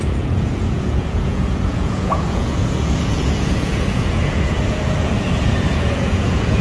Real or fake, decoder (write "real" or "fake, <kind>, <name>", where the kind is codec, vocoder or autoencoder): fake, vocoder, Vocos